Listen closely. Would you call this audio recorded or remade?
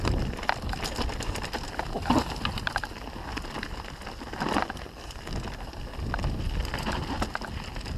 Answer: recorded